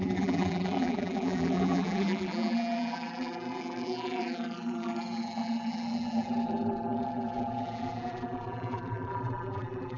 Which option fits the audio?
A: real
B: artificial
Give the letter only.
B